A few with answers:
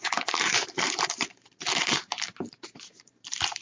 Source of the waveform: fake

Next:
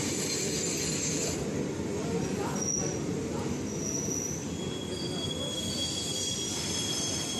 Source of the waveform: real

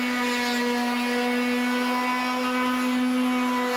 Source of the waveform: real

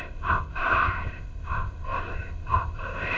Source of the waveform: fake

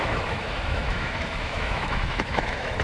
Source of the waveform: fake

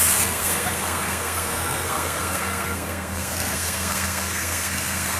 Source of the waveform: fake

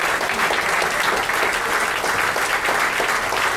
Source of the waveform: real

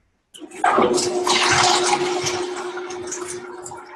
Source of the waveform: real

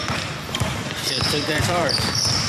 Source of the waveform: fake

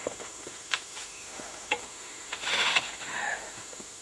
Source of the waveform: fake